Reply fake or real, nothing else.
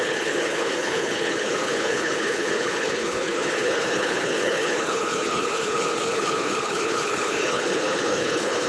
fake